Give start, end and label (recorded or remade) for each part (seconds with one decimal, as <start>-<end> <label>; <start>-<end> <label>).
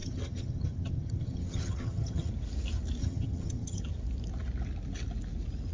0.0-2.3 remade; 2.3-3.0 recorded; 3.0-3.8 remade; 3.8-5.7 recorded